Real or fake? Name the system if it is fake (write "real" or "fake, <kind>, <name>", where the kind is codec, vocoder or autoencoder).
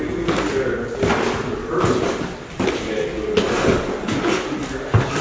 real